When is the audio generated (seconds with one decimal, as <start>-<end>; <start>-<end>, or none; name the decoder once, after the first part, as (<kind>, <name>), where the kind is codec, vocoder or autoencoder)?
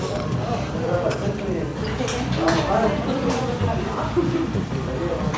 0.0-1.7 (vocoder, BigVGAN v2); 2.6-5.4